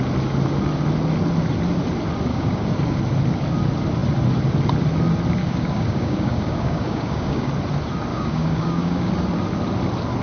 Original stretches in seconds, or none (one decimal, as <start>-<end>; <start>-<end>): 0.0-2.3; 3.0-5.4; 7.5-8.1; 9.1-10.2